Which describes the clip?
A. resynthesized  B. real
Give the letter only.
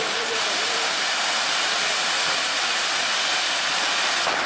A